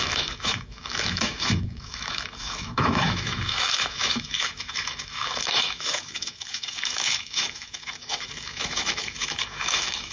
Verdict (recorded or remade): remade